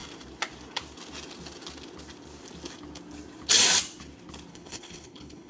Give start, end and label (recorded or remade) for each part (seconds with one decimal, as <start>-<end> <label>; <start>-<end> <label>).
0.0-4.5 recorded; 4.5-5.5 remade